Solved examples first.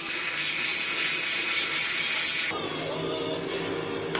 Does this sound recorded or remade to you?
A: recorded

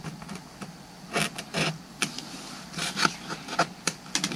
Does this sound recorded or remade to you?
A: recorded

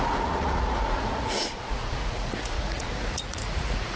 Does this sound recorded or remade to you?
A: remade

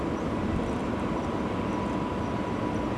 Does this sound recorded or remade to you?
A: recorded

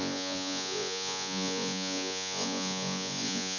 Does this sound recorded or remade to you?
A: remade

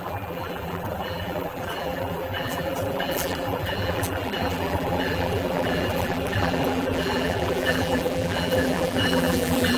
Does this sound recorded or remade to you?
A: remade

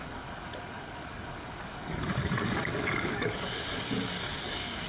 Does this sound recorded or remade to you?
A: remade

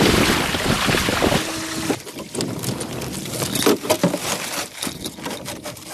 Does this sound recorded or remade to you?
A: recorded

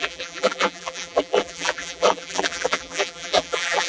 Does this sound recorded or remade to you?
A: remade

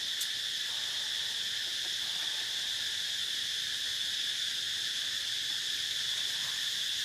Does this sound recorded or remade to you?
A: recorded